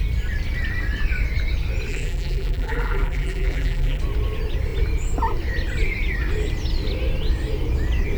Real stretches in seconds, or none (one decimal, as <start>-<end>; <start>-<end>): 0.0-1.9; 4.0-8.2